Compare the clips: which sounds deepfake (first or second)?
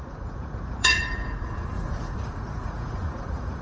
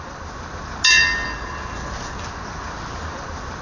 first